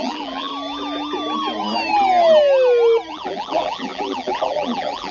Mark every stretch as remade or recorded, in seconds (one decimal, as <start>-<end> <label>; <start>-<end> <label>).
0.0-0.5 remade; 0.5-3.1 recorded; 3.1-5.1 remade